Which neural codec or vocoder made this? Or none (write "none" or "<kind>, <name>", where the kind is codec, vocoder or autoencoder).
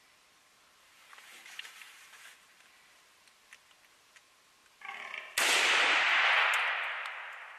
none